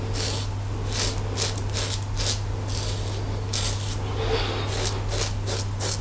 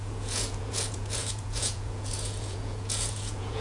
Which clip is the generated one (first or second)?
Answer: second